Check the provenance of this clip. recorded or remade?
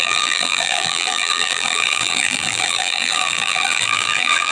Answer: remade